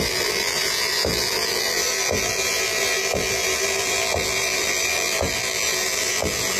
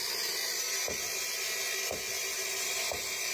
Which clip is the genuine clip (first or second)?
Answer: second